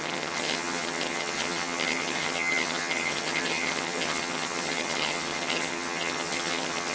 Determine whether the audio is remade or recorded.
remade